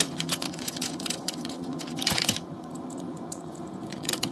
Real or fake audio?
fake